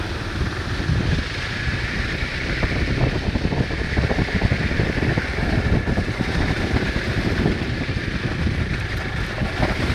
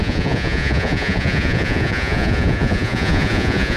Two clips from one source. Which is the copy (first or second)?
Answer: second